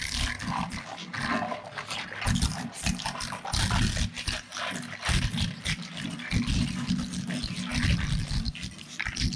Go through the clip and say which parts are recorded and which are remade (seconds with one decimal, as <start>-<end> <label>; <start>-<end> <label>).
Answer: 0.0-9.4 recorded